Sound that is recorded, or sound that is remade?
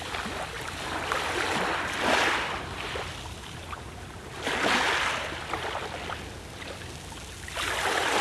recorded